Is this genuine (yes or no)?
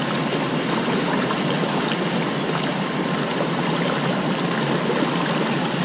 yes